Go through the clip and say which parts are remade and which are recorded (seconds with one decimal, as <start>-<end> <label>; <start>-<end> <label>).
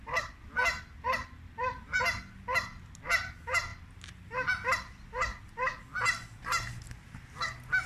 0.0-7.9 recorded